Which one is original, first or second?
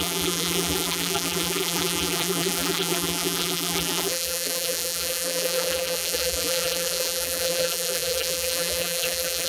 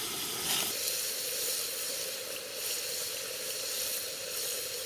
second